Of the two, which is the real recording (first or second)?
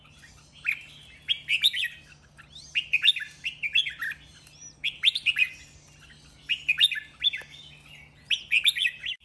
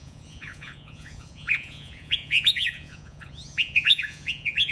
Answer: first